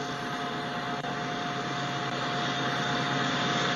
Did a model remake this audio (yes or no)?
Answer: no